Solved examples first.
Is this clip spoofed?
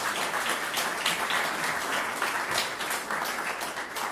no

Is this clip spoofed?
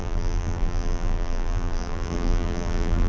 yes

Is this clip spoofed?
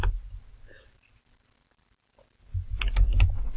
no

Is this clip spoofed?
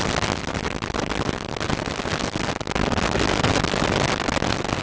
no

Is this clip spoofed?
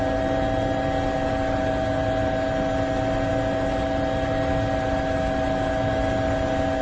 no